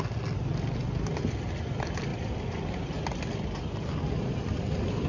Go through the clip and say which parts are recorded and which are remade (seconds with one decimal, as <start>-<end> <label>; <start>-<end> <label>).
0.0-5.1 recorded